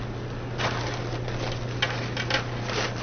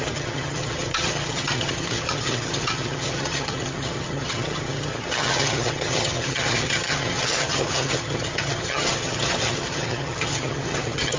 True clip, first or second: first